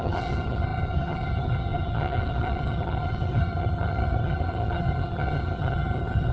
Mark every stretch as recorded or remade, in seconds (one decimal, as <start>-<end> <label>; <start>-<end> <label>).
0.0-6.3 remade